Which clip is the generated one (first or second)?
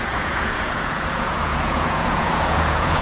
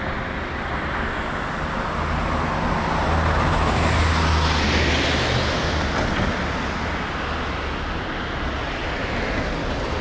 first